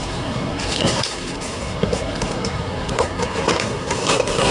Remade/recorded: remade